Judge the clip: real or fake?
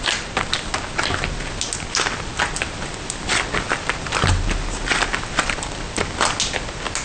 real